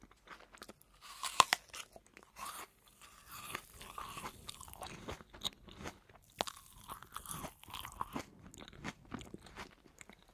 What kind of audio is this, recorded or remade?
recorded